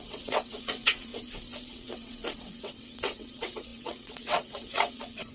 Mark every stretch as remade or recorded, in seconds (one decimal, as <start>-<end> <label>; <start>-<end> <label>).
0.0-1.1 remade; 1.1-1.7 recorded; 1.7-5.3 remade